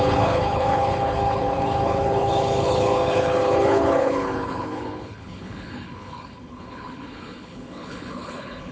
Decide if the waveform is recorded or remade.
remade